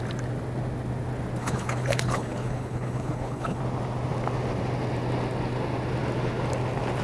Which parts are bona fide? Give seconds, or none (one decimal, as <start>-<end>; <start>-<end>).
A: 0.0-1.4; 3.6-7.0